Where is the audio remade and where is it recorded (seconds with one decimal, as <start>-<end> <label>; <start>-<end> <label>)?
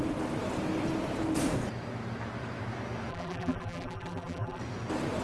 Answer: 0.0-3.1 recorded; 3.1-4.6 remade; 4.6-5.2 recorded